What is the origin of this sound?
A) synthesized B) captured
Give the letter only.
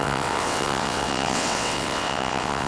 A